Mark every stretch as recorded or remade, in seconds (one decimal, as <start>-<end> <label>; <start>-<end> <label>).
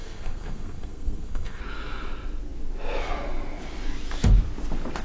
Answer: 0.0-1.6 remade; 1.6-5.0 recorded